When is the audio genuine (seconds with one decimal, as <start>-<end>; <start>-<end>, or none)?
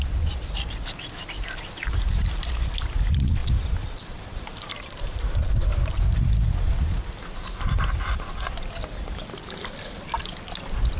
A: 0.0-3.4; 5.2-11.0